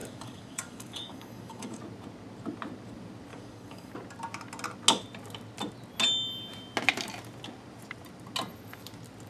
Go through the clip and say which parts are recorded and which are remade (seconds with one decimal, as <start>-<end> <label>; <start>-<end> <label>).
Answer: 0.0-1.8 remade; 1.8-3.3 recorded; 3.3-3.9 remade; 3.9-9.3 recorded